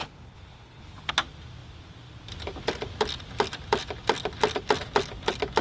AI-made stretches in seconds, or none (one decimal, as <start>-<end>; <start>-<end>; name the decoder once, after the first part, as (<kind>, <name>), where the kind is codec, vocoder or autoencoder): 0.0-1.1 (codec, HILCodec)